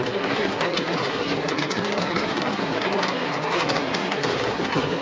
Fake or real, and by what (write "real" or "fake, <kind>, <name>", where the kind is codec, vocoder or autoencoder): fake, codec, SNAC